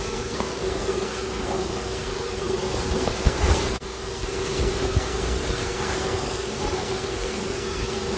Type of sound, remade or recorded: remade